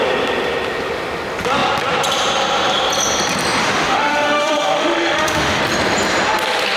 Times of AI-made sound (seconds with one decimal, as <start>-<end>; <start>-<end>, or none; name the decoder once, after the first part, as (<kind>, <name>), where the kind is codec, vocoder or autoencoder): 3.6-5.6 (autoencoder, DAC-VAE)